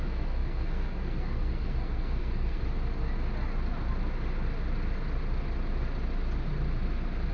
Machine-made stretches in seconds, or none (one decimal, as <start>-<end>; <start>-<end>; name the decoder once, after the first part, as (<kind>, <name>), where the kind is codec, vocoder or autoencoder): 0.0-2.6 (codec, SNAC)